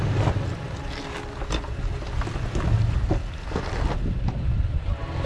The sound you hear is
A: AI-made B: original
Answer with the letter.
B